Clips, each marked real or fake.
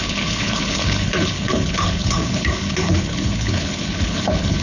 fake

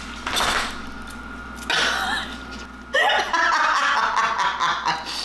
real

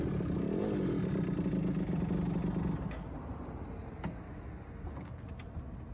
real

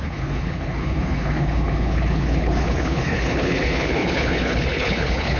fake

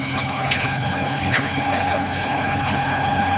fake